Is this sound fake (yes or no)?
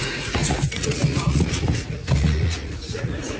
yes